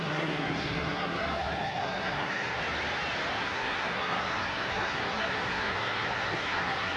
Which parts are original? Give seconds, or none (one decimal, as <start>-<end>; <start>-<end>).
2.6-3.4